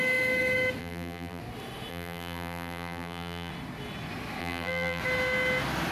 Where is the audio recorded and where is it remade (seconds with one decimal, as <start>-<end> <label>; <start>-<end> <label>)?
0.0-0.8 recorded; 0.8-1.4 remade; 1.4-1.9 recorded; 1.9-3.5 remade; 3.5-4.4 recorded; 4.4-5.0 remade; 5.0-5.9 recorded